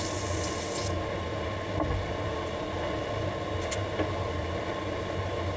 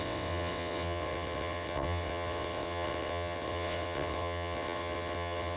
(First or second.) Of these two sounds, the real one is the first